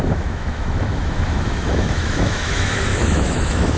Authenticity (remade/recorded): remade